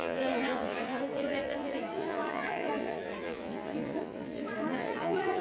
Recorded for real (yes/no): no